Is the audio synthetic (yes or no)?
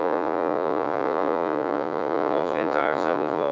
yes